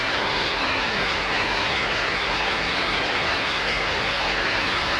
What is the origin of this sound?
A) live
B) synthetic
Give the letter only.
B